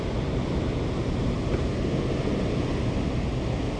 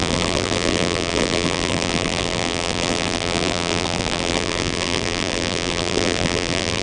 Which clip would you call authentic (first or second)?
first